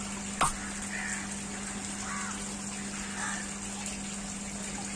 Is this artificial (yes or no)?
no